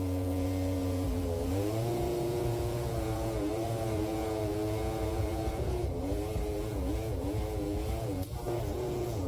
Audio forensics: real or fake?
fake